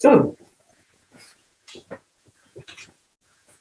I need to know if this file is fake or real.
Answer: fake